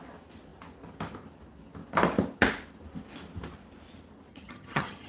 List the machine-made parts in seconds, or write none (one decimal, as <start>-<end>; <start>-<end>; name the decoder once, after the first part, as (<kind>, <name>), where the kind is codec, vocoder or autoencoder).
4.3-5.1 (vocoder, HiFi-GAN)